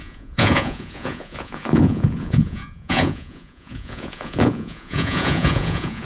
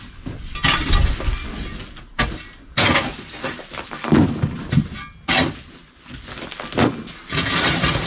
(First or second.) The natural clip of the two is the second